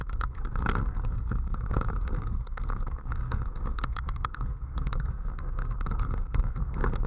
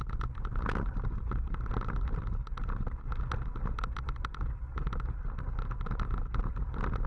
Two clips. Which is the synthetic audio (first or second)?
first